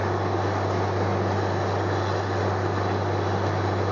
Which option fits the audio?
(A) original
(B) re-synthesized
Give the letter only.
A